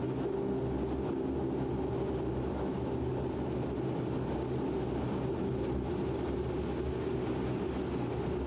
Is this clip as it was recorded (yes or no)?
yes